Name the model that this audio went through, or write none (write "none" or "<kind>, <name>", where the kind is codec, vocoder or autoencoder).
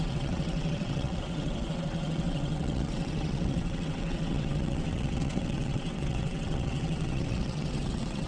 vocoder, WaveNeXt